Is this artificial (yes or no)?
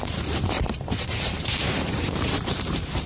yes